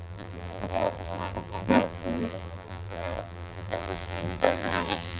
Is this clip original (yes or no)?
no